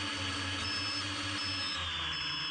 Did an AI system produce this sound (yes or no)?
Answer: no